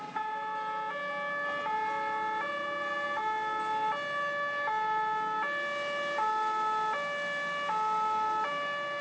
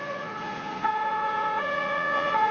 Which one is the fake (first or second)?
second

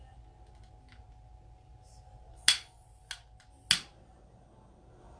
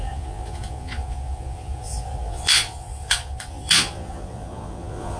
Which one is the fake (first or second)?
second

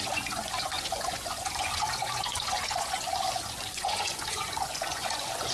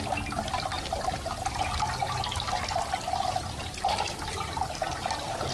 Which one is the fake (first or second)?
first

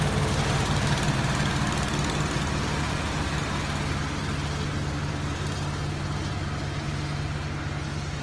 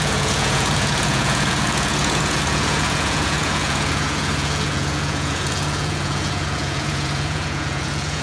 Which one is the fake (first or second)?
second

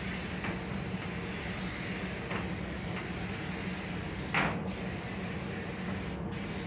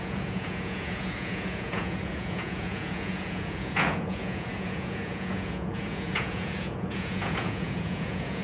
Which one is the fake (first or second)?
second